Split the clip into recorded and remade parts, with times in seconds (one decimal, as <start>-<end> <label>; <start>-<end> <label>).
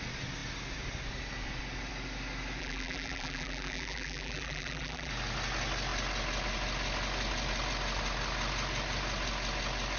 0.0-2.6 recorded; 2.6-5.1 remade; 5.1-10.0 recorded